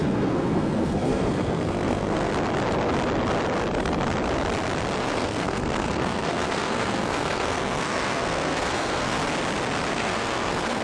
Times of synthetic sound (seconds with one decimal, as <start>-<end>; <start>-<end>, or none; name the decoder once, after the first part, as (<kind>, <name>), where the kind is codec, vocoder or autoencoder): 0.0-2.3 (codec, SNAC); 5.0-9.2; 9.9-10.8